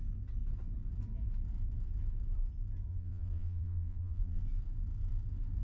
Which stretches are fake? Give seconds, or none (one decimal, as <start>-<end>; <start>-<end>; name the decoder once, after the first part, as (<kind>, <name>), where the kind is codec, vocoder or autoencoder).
2.9-4.4 (vocoder, BigVGAN v2)